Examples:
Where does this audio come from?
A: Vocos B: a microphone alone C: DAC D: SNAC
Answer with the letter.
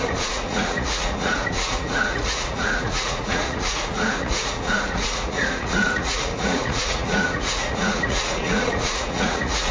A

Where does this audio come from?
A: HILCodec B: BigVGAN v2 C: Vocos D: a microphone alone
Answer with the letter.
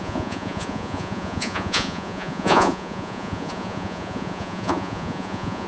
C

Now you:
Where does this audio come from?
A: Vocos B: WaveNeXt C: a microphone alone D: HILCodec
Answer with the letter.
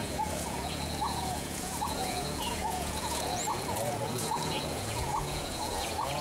A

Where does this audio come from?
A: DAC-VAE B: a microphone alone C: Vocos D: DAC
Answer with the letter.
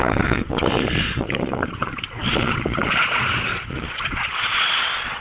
C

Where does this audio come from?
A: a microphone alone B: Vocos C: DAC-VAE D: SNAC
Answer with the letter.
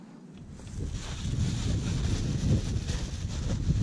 A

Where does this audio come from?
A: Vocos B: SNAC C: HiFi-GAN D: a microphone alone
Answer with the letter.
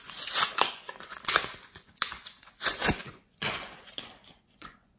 A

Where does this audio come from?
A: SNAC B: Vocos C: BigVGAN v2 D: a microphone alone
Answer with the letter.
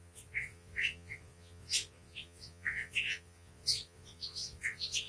B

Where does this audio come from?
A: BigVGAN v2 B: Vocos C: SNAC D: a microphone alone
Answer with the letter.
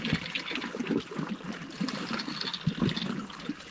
D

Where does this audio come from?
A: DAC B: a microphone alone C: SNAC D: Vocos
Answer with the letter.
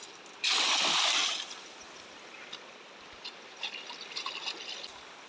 B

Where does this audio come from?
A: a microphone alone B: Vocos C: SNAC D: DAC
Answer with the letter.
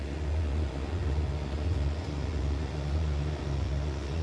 B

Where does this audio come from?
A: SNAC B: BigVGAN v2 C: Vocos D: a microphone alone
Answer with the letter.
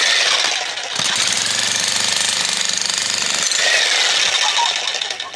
D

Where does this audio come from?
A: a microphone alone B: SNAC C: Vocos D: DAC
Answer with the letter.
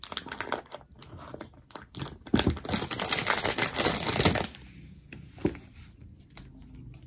A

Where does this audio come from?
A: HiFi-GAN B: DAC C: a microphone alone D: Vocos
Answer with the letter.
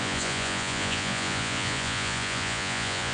D